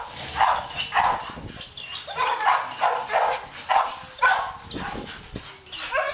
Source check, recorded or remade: recorded